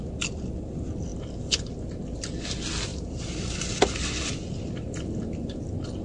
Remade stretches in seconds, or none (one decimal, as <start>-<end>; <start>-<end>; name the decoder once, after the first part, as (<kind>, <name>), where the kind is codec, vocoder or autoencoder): 1.1-1.9 (vocoder, BigVGAN v2); 2.9-5.2